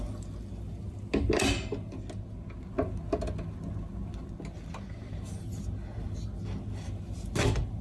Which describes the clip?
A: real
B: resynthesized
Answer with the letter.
A